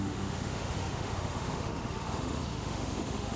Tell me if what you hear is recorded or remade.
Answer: remade